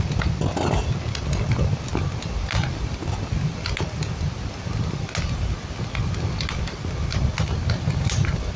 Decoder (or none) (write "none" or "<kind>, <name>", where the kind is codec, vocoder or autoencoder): none